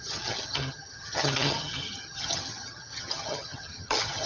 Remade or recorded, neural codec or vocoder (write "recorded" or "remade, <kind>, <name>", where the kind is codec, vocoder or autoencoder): remade, vocoder, HiFi-GAN